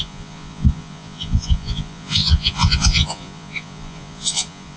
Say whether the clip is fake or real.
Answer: fake